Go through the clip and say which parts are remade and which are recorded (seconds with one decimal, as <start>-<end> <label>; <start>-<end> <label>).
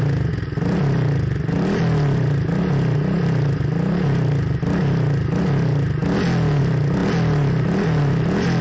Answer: 0.0-8.6 recorded